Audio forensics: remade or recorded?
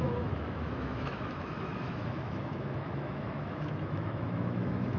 remade